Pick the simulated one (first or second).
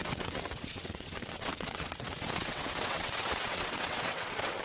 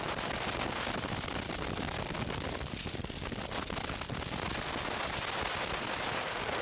first